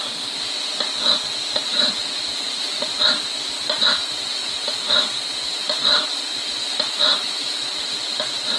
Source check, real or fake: real